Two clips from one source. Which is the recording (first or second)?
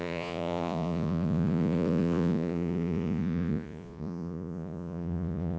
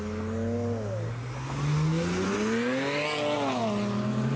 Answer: second